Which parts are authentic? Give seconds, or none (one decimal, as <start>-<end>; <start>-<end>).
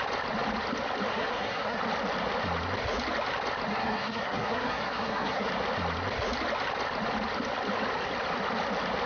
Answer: 0.0-1.1; 1.8-3.7; 5.5-9.1